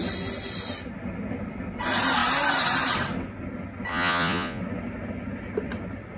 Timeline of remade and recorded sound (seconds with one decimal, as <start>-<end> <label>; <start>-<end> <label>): 0.0-3.9 recorded; 3.9-4.6 remade; 4.6-6.2 recorded